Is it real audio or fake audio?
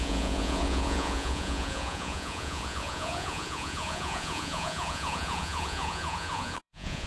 fake